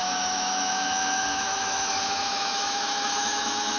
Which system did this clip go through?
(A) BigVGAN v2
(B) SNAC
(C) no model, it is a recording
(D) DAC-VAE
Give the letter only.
D